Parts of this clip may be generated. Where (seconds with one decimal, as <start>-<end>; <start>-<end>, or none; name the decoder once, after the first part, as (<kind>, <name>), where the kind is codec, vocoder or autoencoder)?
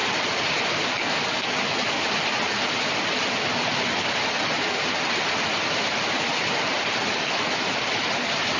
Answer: 3.5-8.6 (vocoder, BigVGAN v2)